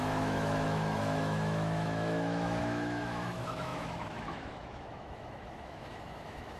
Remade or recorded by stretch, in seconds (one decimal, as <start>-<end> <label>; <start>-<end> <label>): 0.0-6.6 remade